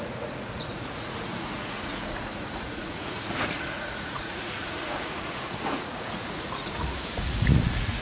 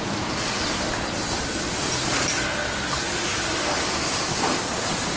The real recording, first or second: second